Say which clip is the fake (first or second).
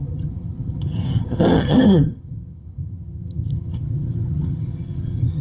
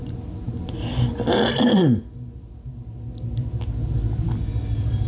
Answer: first